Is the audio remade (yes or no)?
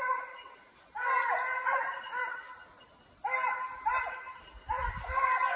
no